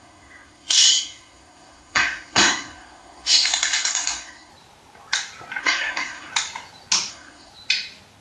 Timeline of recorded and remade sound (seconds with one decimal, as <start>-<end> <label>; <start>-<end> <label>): 0.0-4.5 remade; 4.5-5.6 recorded; 5.6-6.3 remade; 6.3-7.1 recorded; 7.1-7.5 remade; 7.5-8.2 recorded